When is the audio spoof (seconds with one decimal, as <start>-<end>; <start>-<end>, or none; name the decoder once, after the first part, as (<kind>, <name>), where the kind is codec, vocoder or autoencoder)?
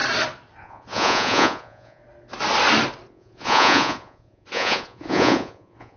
0.6-2.0 (vocoder, Vocos); 3.1-6.0